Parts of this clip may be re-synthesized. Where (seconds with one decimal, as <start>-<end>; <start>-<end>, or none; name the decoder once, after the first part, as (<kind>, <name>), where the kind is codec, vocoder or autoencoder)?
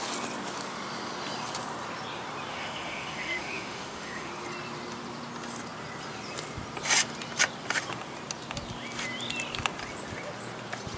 2.5-4.3 (autoencoder, DAC-VAE)